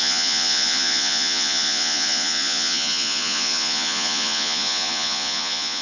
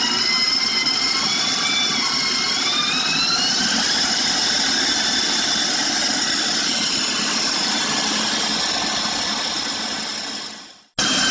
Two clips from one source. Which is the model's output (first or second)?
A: first